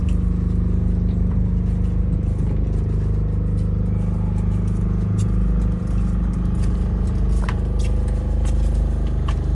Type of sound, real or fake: real